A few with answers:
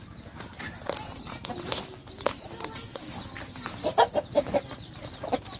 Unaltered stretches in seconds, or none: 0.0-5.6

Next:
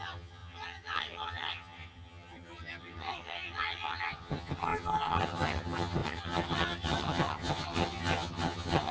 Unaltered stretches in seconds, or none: none

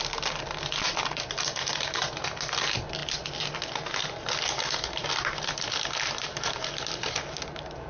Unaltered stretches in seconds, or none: 0.0-7.9

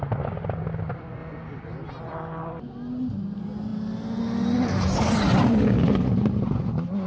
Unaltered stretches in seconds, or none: 0.0-7.1